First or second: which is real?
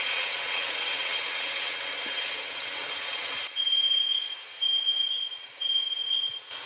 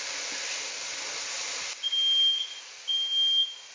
second